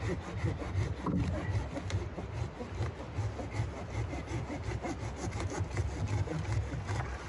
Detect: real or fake real